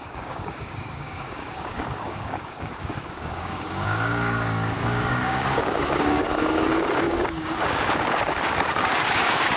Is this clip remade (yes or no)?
yes